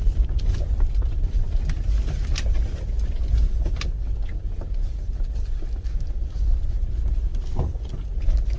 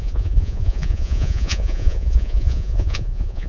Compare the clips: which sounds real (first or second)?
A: first